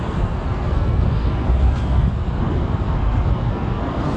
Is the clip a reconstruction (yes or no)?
yes